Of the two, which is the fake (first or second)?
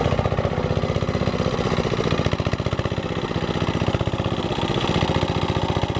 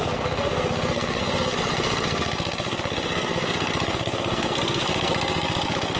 second